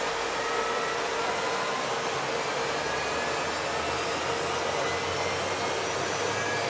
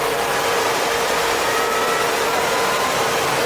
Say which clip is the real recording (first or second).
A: first